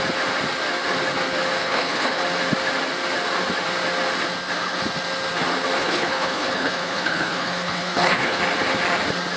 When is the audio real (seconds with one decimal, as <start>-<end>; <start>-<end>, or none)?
0.0-1.6; 2.2-5.8; 8.4-9.4